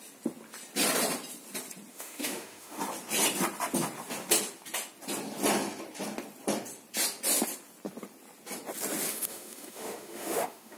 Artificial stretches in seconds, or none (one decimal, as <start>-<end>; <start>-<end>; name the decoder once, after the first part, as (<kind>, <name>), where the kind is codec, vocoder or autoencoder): 1.9-2.8 (autoencoder, DAC-VAE); 9.1-10.8